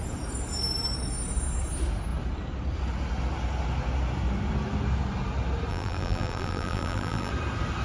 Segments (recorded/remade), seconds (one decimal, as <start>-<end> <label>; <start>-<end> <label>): 0.0-5.7 recorded; 5.7-7.3 remade; 7.3-7.8 recorded